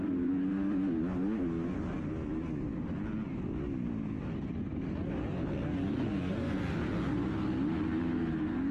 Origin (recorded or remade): recorded